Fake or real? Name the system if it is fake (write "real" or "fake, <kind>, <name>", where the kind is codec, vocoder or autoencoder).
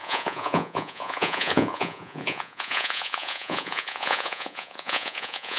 fake, vocoder, Vocos